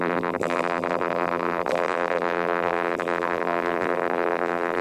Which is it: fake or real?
fake